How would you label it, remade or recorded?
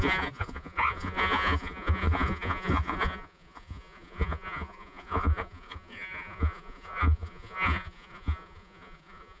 remade